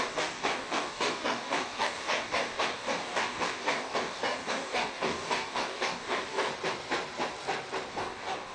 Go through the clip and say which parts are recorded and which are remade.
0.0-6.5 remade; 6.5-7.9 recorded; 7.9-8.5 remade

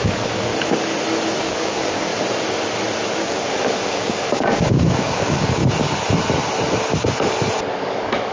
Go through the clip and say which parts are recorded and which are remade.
0.0-0.5 remade; 0.5-1.4 recorded; 1.4-2.1 remade; 2.1-3.1 recorded; 3.1-5.6 remade; 5.6-7.7 recorded; 7.7-8.3 remade

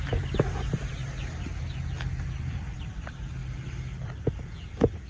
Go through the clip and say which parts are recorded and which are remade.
0.0-5.1 recorded